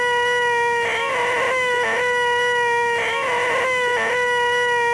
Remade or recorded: recorded